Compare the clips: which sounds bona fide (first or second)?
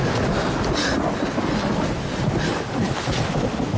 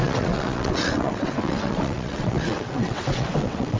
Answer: first